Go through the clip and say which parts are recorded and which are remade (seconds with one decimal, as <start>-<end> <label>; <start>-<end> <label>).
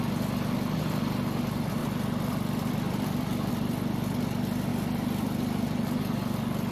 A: 0.0-1.8 recorded; 1.8-3.5 remade; 3.5-4.7 recorded; 4.7-6.0 remade; 6.0-6.7 recorded